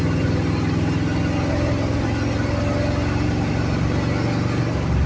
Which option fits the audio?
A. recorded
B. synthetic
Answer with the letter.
A